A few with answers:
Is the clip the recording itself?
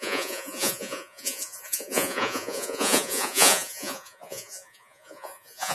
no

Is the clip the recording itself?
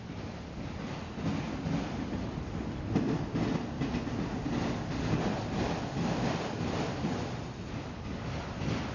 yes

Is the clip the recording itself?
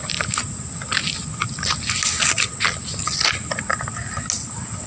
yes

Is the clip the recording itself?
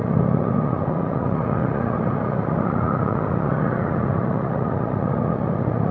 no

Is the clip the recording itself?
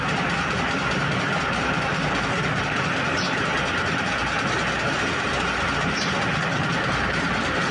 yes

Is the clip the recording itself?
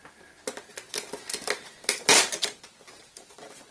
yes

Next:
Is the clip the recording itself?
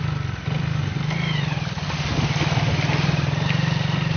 yes